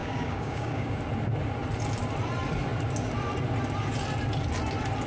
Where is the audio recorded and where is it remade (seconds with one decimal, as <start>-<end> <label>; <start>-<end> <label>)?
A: 0.0-1.0 remade; 1.0-5.1 recorded

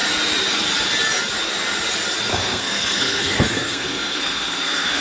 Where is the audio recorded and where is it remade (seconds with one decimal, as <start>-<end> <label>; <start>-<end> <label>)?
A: 0.0-2.3 recorded; 2.3-5.0 remade

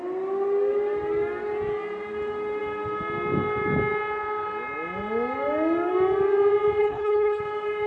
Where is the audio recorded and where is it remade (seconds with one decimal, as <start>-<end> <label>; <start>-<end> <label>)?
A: 0.0-6.8 recorded; 6.8-7.4 remade; 7.4-7.9 recorded